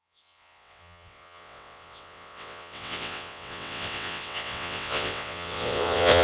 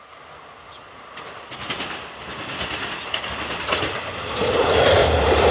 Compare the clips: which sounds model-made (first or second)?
first